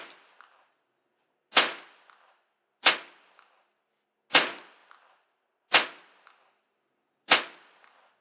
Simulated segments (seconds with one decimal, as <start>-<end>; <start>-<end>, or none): none